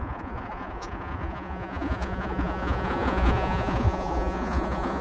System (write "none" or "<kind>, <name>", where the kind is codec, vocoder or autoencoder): vocoder, Vocos